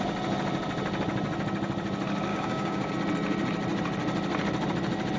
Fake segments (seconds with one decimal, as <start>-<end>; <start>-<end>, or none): 2.3-2.9